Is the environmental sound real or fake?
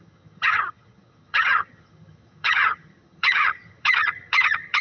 fake